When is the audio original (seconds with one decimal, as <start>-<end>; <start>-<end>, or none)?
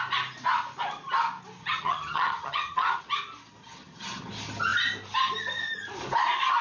0.0-1.6; 3.0-3.6; 4.3-6.6